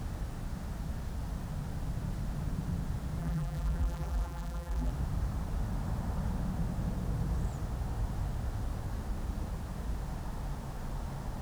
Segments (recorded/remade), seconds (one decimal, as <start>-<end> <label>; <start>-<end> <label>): 0.0-3.2 recorded; 3.2-4.9 remade; 4.9-11.4 recorded